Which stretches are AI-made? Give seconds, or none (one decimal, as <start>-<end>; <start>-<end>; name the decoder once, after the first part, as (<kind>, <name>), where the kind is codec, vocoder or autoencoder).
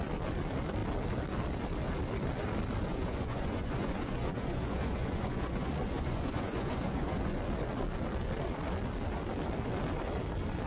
2.9-7.4 (vocoder, Vocos)